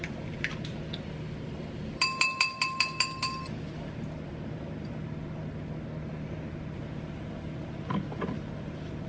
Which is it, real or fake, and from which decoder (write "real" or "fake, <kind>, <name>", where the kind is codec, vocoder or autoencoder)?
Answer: real